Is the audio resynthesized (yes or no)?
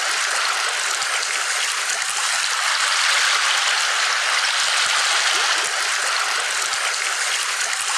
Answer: no